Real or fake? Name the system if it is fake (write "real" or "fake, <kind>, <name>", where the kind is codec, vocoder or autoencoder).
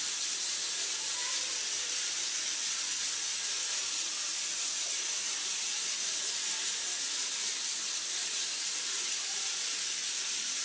real